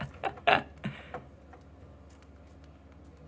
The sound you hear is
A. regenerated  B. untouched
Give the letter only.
B